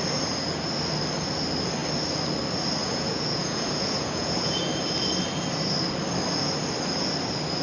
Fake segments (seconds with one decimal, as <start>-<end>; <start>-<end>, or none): 2.8-4.7